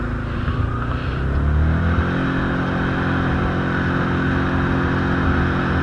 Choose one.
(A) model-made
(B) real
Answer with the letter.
B